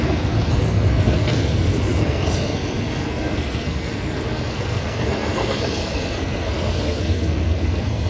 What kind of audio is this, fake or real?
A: fake